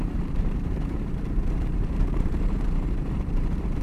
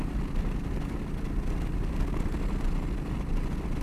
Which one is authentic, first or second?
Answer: second